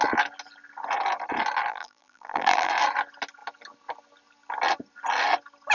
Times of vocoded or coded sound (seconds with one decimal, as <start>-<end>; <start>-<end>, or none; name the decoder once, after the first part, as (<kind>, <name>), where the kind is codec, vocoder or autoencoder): 1.7-2.7 (vocoder, BigVGAN v2)